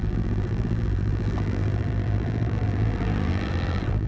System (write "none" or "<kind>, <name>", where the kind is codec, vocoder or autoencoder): vocoder, BigVGAN v2